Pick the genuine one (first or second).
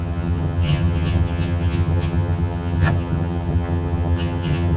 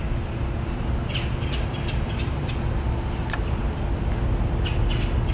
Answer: second